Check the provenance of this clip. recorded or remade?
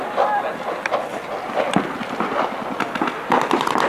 recorded